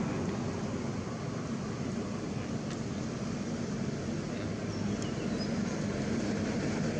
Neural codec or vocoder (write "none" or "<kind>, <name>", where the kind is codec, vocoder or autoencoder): none